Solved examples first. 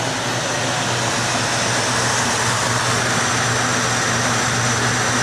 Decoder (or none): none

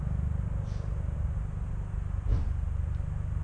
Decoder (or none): none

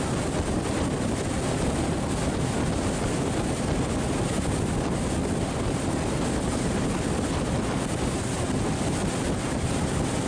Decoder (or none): none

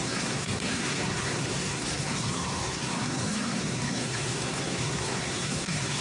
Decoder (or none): codec, SNAC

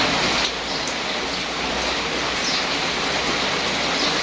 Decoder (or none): none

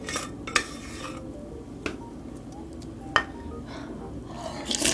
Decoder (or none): none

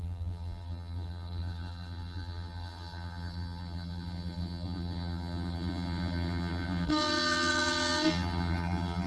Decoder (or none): vocoder, BigVGAN v2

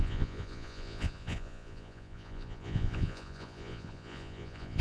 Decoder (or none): vocoder, Vocos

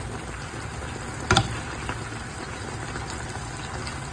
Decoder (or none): none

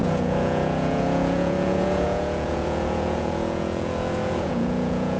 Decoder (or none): vocoder, Vocos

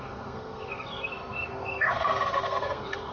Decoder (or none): codec, SNAC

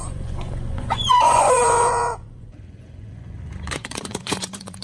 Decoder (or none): vocoder, Vocos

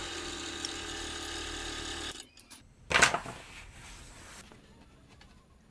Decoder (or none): none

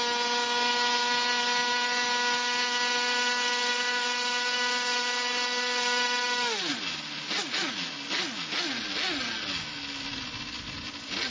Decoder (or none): none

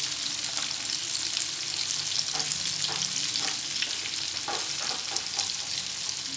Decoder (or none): none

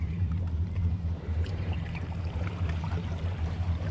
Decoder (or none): vocoder, BigVGAN v2